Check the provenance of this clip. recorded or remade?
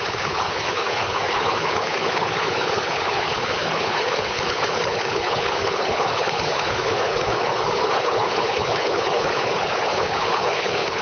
remade